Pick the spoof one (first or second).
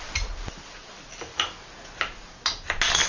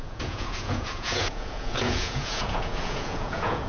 second